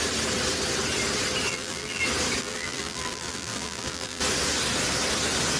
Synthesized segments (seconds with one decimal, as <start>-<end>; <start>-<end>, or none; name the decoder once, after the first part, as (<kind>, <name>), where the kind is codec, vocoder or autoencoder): 1.5-2.0 (vocoder, BigVGAN v2); 2.4-4.2